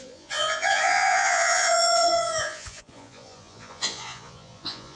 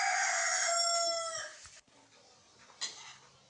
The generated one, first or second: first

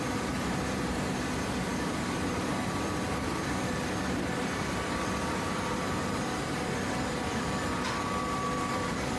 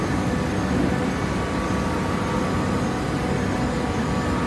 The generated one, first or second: first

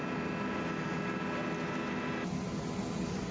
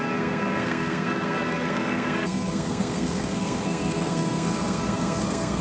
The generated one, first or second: second